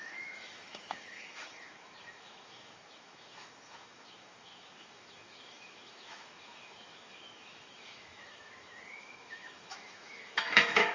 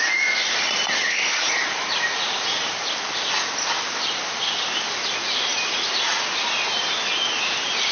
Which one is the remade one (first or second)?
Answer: first